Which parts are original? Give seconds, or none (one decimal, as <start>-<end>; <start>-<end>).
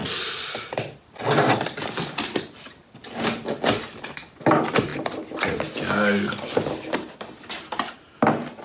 0.0-8.6